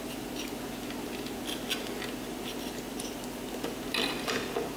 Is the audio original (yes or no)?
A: yes